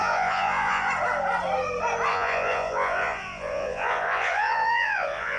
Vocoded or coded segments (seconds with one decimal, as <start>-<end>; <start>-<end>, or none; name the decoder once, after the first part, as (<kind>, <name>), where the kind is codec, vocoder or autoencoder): 0.0-0.9 (vocoder, Vocos); 2.1-5.4